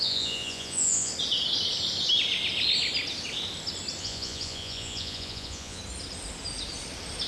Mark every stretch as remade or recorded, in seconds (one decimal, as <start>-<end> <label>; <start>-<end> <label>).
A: 0.0-1.1 remade; 1.1-4.0 recorded; 4.0-5.8 remade; 5.8-7.3 recorded